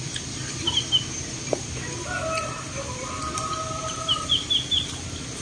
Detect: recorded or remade recorded